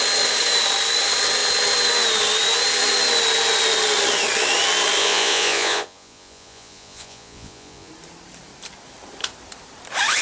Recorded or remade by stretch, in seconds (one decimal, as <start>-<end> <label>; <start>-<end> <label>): 0.0-5.0 recorded; 5.0-7.9 remade; 7.9-10.2 recorded